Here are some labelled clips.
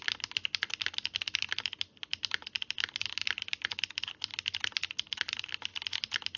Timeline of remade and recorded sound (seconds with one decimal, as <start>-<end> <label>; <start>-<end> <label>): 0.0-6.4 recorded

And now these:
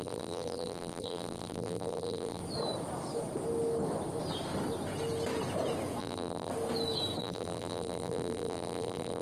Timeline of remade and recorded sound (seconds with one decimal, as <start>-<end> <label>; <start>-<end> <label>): 0.0-2.4 remade; 2.4-6.0 recorded; 6.0-6.5 remade; 6.5-7.2 recorded; 7.2-9.2 remade

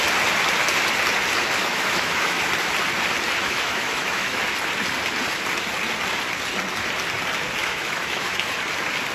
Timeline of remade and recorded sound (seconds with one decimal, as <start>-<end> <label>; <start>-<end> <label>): 0.0-1.6 recorded; 1.6-2.4 remade; 2.4-3.4 recorded; 3.4-4.4 remade; 4.4-7.6 recorded; 7.6-8.5 remade; 8.5-9.1 recorded

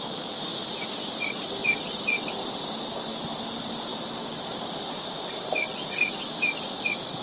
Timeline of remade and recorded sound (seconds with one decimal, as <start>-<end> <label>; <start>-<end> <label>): 0.0-7.2 recorded